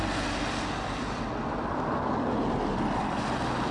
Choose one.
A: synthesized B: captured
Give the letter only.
B